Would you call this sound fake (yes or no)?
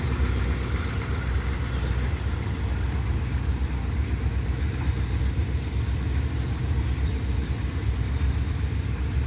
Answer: no